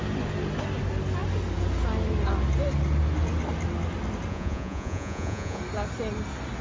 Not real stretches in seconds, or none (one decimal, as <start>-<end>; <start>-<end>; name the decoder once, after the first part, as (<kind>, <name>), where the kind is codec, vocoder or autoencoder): 4.3-5.6 (vocoder, Vocos)